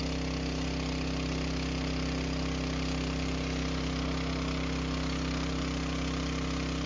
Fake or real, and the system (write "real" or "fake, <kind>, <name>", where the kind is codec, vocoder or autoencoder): real